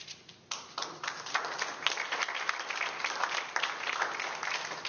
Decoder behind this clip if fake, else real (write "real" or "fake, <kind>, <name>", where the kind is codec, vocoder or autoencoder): real